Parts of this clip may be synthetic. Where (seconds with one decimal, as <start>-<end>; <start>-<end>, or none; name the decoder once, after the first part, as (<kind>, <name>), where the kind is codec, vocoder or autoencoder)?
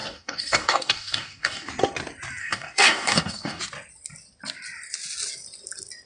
0.0-1.7 (codec, DAC); 2.4-3.6